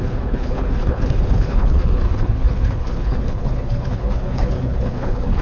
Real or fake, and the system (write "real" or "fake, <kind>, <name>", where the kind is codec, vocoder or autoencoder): fake, codec, HILCodec